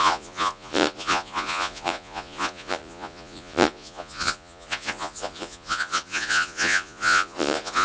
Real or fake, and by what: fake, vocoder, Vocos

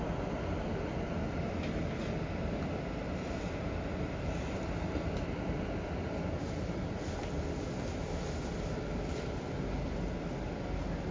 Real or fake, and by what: real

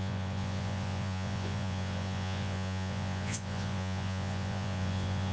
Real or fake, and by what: fake, vocoder, Vocos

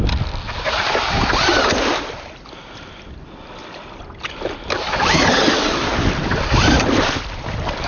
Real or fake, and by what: real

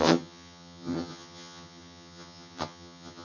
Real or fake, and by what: fake, vocoder, HiFi-GAN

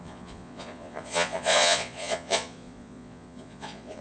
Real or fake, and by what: fake, vocoder, Vocos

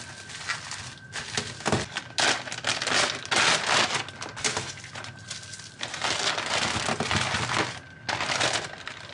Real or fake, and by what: real